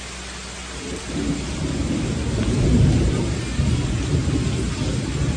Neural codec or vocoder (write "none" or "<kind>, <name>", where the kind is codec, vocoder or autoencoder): none